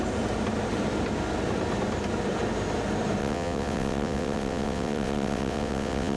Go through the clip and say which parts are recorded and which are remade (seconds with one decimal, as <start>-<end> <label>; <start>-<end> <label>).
0.0-3.2 recorded; 3.2-6.2 remade